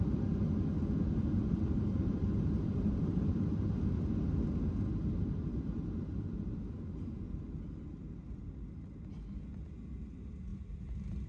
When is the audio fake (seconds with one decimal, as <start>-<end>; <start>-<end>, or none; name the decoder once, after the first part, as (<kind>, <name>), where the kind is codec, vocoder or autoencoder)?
1.4-3.8 (vocoder, BigVGAN v2); 5.0-7.0